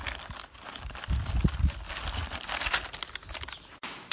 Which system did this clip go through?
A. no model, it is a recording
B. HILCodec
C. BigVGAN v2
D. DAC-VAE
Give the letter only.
A